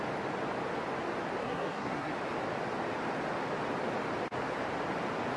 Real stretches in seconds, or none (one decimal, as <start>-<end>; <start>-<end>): 0.0-1.4; 2.1-5.4